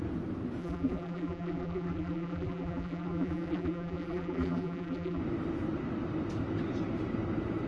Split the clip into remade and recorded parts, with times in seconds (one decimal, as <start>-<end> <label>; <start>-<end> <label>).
0.0-0.6 recorded; 0.6-5.2 remade; 5.2-7.7 recorded